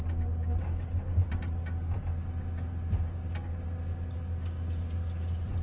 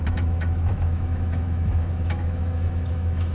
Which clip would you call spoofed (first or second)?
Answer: second